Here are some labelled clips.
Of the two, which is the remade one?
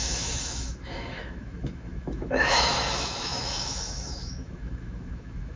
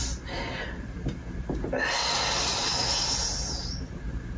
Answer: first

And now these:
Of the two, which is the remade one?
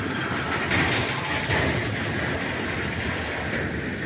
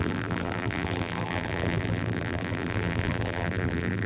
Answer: second